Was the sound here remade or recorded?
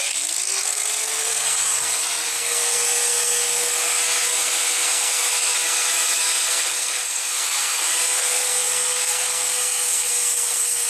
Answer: remade